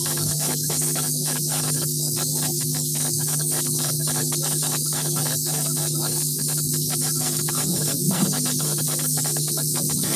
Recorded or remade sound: remade